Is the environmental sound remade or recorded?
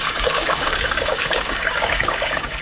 remade